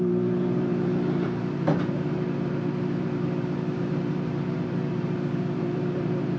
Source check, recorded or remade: remade